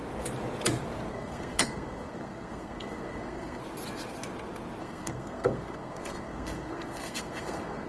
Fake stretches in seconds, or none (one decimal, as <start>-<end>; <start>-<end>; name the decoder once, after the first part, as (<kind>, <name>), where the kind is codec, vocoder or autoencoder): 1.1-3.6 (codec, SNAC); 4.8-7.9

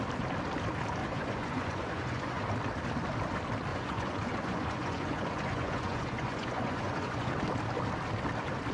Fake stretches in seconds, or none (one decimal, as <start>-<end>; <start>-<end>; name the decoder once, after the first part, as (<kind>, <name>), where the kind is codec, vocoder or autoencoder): 1.0-2.4 (vocoder, Vocos); 3.7-7.3

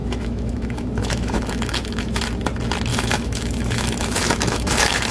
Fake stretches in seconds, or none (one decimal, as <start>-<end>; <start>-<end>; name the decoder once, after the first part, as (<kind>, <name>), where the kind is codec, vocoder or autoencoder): 0.0-2.2 (autoencoder, DAC-VAE); 2.9-5.1

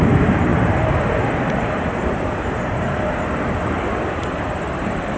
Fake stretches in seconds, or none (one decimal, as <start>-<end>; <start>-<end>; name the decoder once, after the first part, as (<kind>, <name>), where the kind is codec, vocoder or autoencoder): 0.0-5.2 (vocoder, BigVGAN v2)

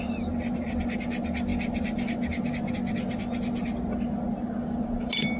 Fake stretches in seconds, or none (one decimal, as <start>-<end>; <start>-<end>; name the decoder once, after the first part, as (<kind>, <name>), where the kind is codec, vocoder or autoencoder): none

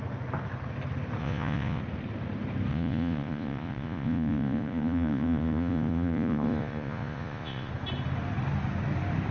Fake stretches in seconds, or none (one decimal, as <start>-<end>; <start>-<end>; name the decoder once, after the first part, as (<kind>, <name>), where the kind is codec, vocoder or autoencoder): 1.2-1.8 (vocoder, Vocos); 2.7-7.7